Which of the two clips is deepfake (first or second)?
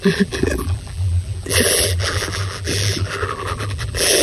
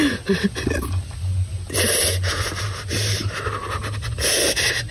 first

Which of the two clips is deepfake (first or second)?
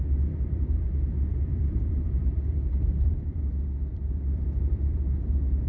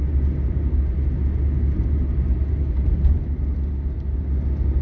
first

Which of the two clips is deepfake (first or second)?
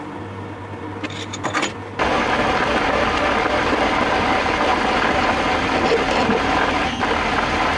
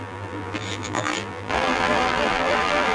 second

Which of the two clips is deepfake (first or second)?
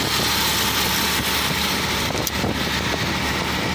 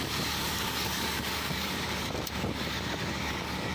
second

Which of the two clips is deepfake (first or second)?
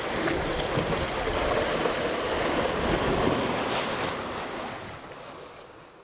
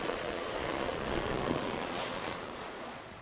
second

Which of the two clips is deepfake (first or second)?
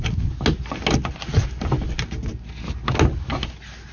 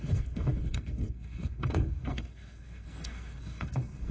second